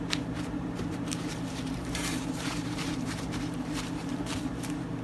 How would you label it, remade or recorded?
remade